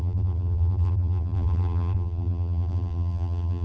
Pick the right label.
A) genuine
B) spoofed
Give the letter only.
B